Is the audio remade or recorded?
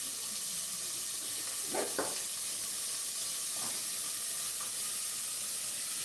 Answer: recorded